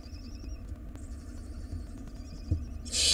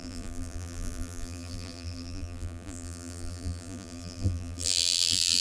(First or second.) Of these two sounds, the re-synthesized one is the second